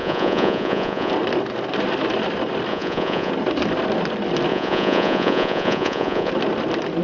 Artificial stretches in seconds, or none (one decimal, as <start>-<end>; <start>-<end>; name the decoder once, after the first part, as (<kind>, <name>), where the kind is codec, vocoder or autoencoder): 0.0-1.1 (vocoder, Vocos); 2.7-3.3; 4.5-6.3